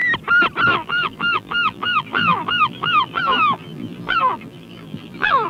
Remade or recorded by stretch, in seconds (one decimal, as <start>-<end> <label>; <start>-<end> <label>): 0.0-0.7 recorded; 0.7-5.5 remade